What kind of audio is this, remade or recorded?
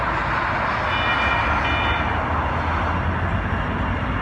recorded